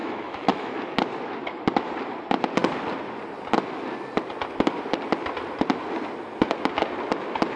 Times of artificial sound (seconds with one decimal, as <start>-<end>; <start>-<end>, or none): 0.0-0.7